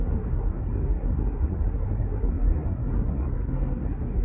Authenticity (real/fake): fake